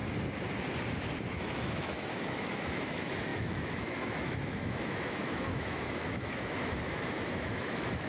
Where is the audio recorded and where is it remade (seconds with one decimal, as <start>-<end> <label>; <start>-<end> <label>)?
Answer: 0.0-1.3 recorded; 1.3-8.1 remade